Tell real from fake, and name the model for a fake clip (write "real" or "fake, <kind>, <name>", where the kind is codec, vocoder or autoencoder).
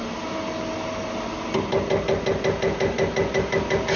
real